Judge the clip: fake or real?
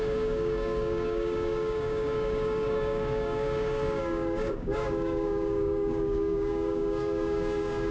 fake